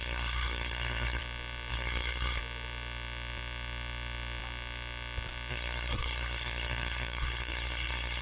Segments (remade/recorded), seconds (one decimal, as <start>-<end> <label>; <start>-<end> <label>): 0.0-1.2 remade; 1.2-1.7 recorded; 1.7-2.4 remade; 2.4-5.5 recorded; 5.5-8.2 remade

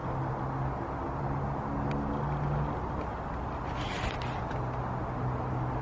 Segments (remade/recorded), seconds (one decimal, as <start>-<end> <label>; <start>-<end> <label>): 0.0-5.8 recorded

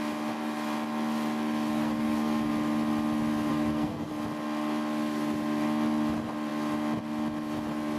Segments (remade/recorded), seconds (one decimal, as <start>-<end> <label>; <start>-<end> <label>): 0.0-1.7 recorded; 1.7-2.5 remade; 2.5-3.5 recorded; 3.5-4.1 remade; 4.1-8.0 recorded

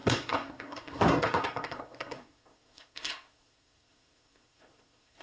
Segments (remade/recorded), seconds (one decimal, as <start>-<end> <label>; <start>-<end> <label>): 0.0-5.2 remade